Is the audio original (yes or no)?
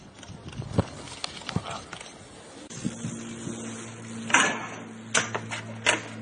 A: yes